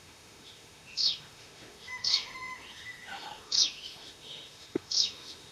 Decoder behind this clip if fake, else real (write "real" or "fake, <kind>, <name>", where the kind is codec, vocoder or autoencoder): fake, autoencoder, DAC-VAE